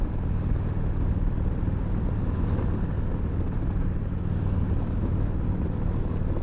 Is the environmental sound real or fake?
real